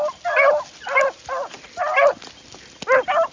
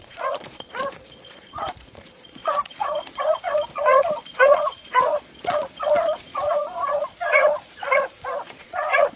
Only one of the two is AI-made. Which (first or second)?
second